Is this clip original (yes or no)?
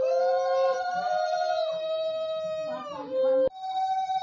yes